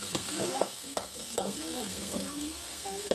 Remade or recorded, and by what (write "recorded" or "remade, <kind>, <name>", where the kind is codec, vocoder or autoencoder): remade, codec, SNAC